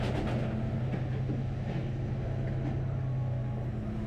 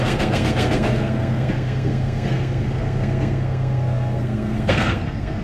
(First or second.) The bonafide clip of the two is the first